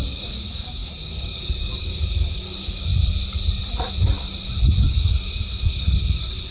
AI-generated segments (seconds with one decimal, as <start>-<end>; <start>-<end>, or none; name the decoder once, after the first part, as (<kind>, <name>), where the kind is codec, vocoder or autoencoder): 0.0-2.9 (codec, DAC); 4.8-6.5